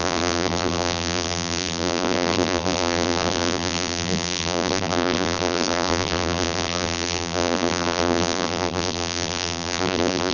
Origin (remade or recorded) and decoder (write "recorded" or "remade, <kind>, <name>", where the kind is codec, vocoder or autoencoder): remade, vocoder, BigVGAN v2